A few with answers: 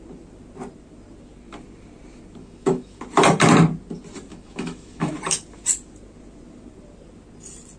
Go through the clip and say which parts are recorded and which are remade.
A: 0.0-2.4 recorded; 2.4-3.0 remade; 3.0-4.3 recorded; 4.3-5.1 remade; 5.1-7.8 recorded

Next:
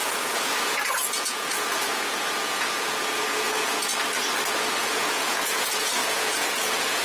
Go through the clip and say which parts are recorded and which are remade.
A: 0.0-3.9 remade; 3.9-4.8 recorded; 4.8-7.0 remade

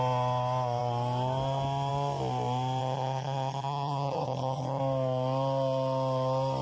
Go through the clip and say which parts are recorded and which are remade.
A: 0.0-2.8 recorded; 2.8-4.8 remade; 4.8-6.6 recorded

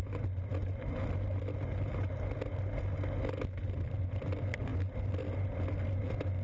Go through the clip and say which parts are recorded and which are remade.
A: 0.0-6.4 recorded

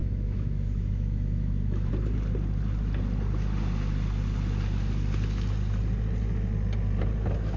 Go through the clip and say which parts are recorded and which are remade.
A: 0.0-1.9 remade; 1.9-7.6 recorded

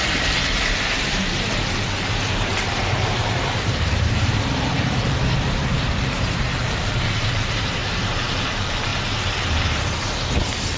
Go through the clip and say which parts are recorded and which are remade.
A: 0.0-8.9 remade; 8.9-10.1 recorded; 10.1-10.8 remade

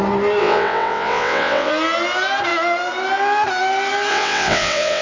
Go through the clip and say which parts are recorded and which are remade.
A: 0.0-0.4 recorded; 0.4-1.7 remade; 1.7-4.1 recorded; 4.1-5.0 remade

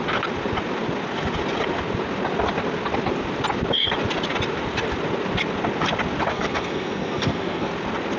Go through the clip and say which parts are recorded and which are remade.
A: 0.0-6.3 recorded; 6.3-7.7 remade; 7.7-8.2 recorded